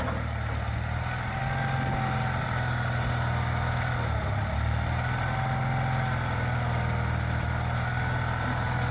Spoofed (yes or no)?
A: no